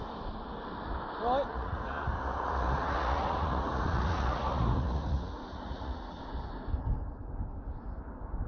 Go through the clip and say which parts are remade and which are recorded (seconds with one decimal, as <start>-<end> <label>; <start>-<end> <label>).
0.0-1.5 recorded; 1.5-6.2 remade; 6.2-8.5 recorded